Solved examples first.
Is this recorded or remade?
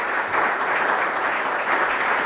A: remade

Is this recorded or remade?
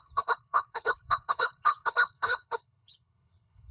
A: remade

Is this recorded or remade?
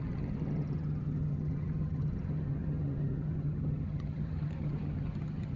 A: remade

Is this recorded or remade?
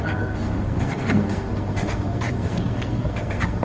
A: remade